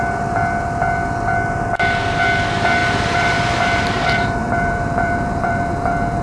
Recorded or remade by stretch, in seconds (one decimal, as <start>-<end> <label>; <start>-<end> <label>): 0.0-2.8 recorded; 2.8-5.7 remade; 5.7-6.2 recorded